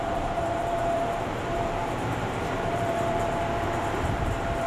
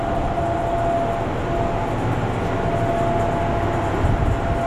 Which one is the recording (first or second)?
second